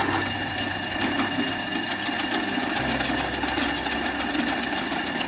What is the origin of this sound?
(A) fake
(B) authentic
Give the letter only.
B